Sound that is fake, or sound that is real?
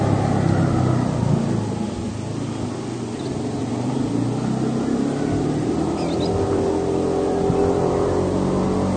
real